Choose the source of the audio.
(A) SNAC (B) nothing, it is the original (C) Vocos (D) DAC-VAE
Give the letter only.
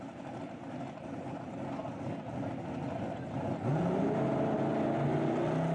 B